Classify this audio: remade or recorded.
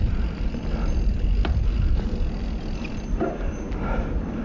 recorded